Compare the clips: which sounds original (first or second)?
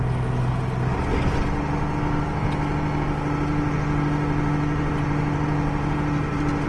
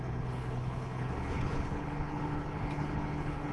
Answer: first